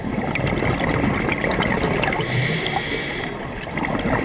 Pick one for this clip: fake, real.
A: real